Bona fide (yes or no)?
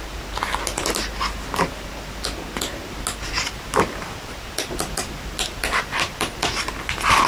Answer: yes